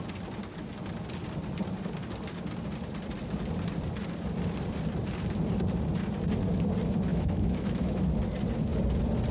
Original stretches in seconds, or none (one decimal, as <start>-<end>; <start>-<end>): 0.0-7.1; 8.2-9.3